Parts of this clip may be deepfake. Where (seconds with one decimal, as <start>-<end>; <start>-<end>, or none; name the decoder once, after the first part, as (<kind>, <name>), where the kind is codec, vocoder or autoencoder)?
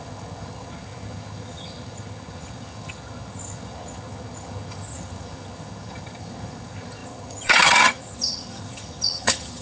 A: 0.0-9.6 (vocoder, HiFi-GAN)